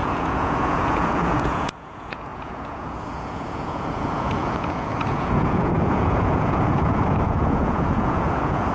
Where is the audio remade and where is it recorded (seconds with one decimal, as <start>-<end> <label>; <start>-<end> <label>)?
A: 0.0-8.7 remade